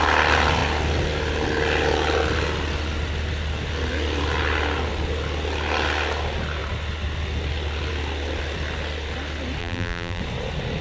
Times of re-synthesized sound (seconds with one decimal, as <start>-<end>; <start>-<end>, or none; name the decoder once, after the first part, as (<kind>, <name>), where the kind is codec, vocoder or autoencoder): 9.6-10.2 (vocoder, BigVGAN v2)